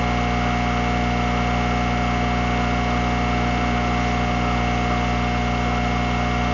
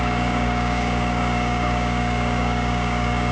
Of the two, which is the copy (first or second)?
second